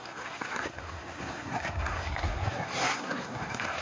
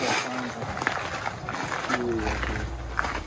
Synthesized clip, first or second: first